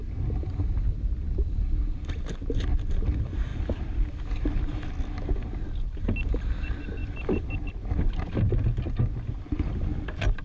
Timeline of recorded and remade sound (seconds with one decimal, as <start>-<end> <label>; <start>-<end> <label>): 0.0-10.4 recorded